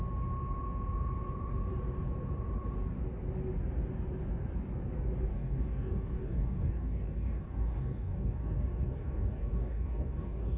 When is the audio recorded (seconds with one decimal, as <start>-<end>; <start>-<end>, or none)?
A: 0.0-5.3